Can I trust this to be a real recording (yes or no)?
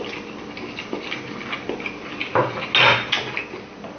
yes